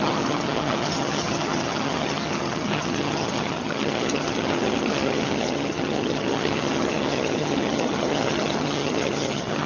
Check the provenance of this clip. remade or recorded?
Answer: remade